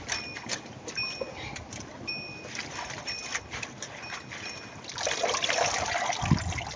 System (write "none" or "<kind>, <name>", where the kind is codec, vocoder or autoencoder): none